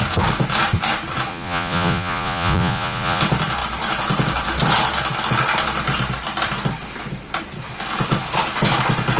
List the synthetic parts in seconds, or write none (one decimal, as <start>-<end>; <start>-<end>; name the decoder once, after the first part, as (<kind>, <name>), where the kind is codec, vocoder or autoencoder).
1.3-3.2 (vocoder, Vocos)